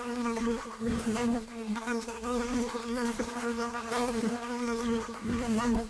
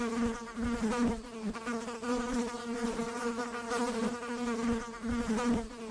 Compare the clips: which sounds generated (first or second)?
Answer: first